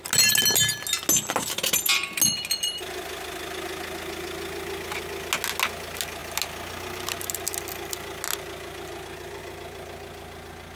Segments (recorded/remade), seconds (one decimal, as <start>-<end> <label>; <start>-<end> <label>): 0.0-10.8 recorded